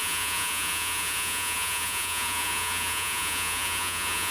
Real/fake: fake